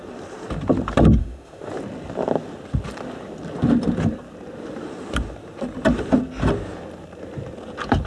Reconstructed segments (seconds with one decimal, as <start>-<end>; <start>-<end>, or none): 1.2-1.7